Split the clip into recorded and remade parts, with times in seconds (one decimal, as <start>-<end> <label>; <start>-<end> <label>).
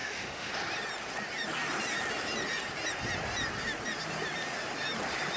0.0-0.5 remade; 0.5-5.4 recorded